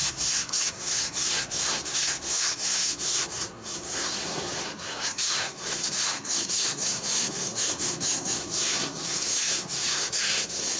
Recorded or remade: remade